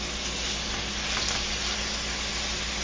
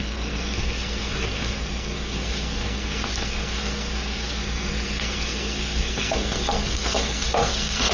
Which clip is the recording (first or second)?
first